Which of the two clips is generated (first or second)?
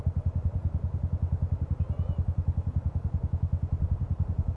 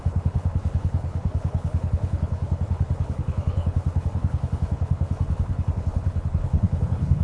second